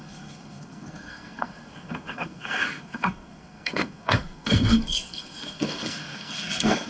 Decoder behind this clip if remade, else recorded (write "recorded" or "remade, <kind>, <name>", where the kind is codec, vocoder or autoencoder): remade, codec, SNAC